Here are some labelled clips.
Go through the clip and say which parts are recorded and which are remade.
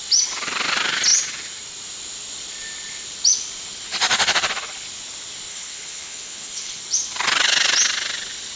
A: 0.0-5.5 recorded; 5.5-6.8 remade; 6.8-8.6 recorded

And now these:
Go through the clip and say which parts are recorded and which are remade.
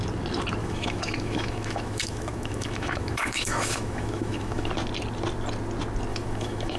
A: 0.0-0.6 recorded; 0.6-4.7 remade; 4.7-6.1 recorded; 6.1-6.8 remade